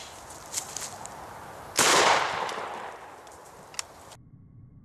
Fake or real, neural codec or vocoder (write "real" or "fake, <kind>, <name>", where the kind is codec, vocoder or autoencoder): real